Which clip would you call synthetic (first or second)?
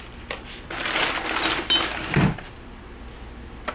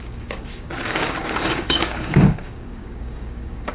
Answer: second